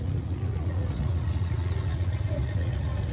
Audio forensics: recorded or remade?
remade